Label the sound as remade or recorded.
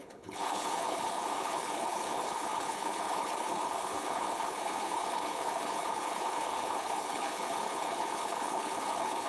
remade